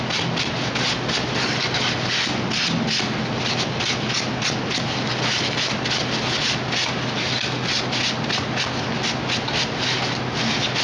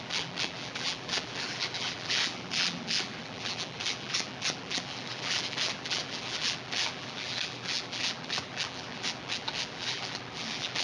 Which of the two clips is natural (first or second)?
first